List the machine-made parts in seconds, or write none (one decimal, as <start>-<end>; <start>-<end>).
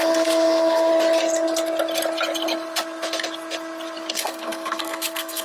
0.0-0.9; 4.1-5.4